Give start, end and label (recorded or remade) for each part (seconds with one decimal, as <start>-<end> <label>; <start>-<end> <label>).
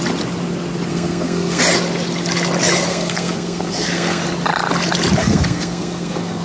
0.0-0.9 recorded; 0.9-1.6 remade; 1.6-2.9 recorded; 2.9-4.2 remade; 4.2-5.2 recorded; 5.2-6.4 remade